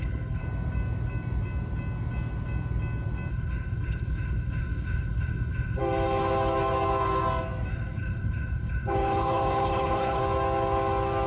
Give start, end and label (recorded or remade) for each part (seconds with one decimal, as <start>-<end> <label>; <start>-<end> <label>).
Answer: 0.0-0.4 remade; 0.4-3.3 recorded; 3.3-5.8 remade; 5.8-7.7 recorded; 7.7-10.2 remade; 10.2-11.3 recorded